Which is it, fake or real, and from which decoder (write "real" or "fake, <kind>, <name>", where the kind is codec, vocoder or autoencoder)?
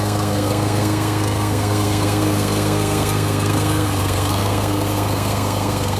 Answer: fake, codec, SNAC